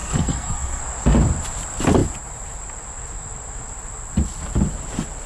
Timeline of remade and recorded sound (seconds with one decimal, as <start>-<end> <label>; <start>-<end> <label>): 0.0-0.8 remade; 0.8-5.3 recorded